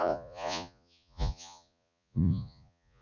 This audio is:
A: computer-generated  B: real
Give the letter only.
A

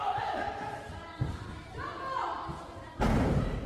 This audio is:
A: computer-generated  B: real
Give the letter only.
B